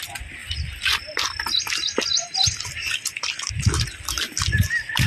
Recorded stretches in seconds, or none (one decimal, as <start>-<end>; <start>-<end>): 0.0-5.1